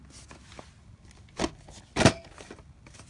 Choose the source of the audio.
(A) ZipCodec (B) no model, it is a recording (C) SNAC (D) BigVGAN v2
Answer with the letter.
B